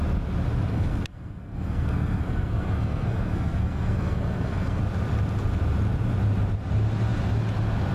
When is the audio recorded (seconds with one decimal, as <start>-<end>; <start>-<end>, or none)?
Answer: 0.0-0.7; 4.8-7.9